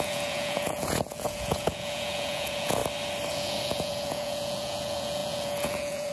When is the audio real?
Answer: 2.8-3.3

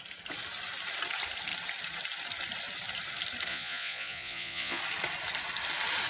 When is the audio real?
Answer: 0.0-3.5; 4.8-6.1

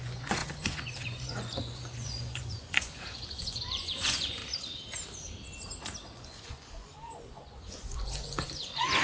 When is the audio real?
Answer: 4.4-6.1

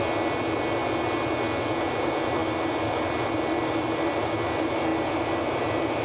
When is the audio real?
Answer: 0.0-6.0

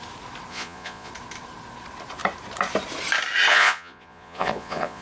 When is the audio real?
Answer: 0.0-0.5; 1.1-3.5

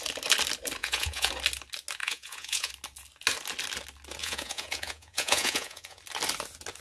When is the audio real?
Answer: 0.0-0.8; 1.3-2.0; 2.7-4.2; 6.0-6.8

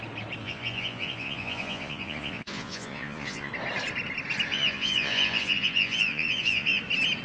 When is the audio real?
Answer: 0.0-0.4; 3.5-4.5; 6.8-7.2